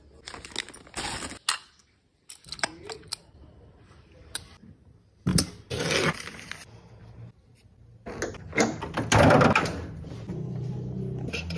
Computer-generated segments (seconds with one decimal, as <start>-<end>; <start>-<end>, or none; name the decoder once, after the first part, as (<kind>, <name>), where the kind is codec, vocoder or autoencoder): none